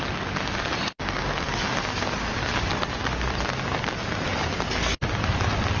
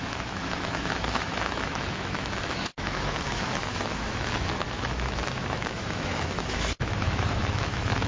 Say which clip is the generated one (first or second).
second